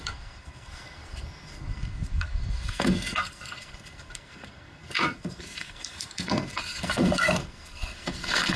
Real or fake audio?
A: fake